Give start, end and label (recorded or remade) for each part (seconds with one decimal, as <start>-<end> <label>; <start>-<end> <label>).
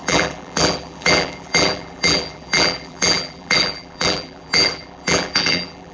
0.0-5.9 remade